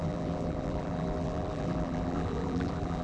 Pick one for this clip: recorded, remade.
remade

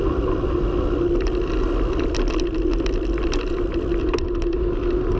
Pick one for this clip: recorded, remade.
recorded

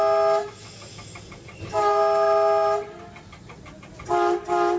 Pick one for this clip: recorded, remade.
recorded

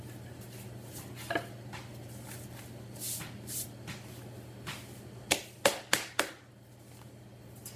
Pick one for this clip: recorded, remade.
recorded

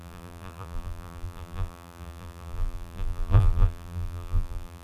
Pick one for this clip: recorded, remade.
remade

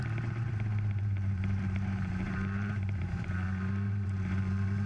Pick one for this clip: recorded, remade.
remade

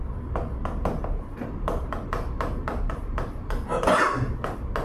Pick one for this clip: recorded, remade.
recorded